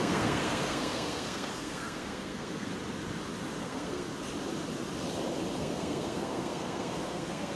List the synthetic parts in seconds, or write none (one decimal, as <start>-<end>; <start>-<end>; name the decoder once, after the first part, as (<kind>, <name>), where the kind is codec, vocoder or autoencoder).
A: 0.0-2.7 (codec, SNAC); 3.6-4.1; 5.6-7.6

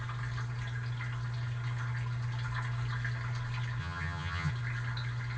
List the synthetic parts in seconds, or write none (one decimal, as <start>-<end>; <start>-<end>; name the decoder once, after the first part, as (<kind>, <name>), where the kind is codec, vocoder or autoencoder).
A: 3.8-4.5 (vocoder, HiFi-GAN)

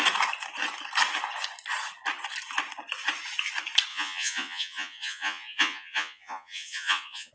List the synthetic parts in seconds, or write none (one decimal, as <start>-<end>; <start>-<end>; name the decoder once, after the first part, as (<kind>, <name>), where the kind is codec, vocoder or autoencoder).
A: 3.9-7.3 (vocoder, Vocos)

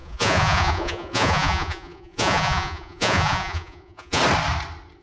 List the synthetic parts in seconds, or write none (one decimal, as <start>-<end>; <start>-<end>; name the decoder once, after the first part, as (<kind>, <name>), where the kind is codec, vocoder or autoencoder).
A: 0.0-4.2 (vocoder, Vocos)

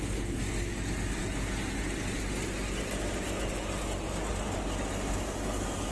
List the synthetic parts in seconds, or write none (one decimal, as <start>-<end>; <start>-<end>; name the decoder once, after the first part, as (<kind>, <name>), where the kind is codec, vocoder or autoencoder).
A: none

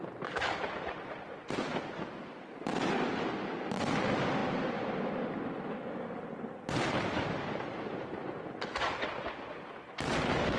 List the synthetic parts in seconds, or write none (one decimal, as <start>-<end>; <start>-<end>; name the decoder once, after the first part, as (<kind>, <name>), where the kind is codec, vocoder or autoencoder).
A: none

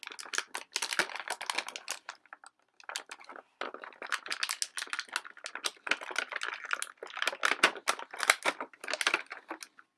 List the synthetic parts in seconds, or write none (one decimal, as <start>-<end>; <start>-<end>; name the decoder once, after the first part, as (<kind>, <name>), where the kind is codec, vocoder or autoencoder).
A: none